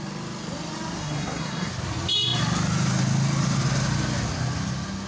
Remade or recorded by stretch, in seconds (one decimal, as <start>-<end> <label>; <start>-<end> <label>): 0.0-1.0 recorded; 1.0-1.7 remade; 1.7-5.1 recorded